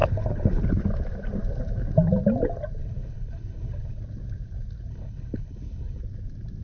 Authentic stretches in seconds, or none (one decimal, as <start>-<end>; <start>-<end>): 0.6-2.8; 4.0-4.9; 6.0-6.6